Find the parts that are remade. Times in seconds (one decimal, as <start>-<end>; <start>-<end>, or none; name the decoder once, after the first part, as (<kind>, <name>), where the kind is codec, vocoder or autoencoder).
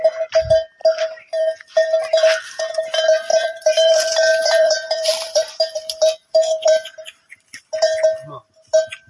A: 3.3-5.6 (vocoder, BigVGAN v2)